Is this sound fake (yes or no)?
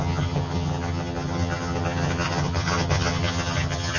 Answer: yes